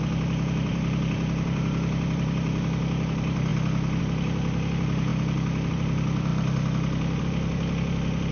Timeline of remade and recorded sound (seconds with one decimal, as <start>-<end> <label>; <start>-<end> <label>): 0.0-3.5 remade; 3.5-4.0 recorded; 4.0-5.1 remade; 5.1-5.7 recorded; 5.7-6.3 remade; 6.3-7.2 recorded; 7.2-8.3 remade